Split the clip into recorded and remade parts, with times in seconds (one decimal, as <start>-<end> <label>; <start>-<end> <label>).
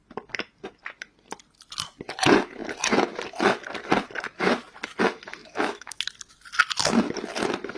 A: 0.0-5.4 recorded; 5.4-6.0 remade; 6.0-7.8 recorded